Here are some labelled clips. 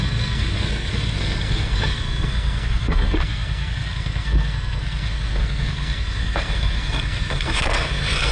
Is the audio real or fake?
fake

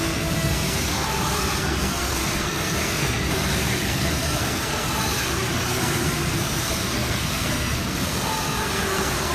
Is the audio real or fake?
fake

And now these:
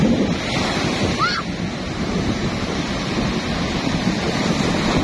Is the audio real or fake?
real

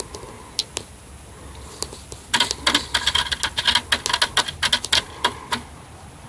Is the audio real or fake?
real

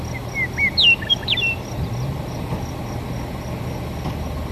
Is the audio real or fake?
real